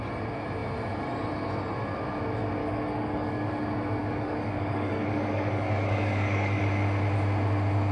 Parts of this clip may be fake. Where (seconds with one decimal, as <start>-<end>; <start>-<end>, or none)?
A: 2.6-3.5; 4.0-6.6